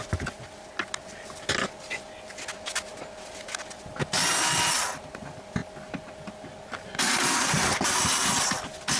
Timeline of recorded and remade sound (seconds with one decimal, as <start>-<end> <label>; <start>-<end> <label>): 0.0-9.0 recorded